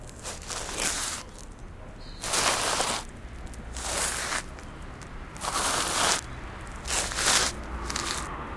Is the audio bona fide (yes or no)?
yes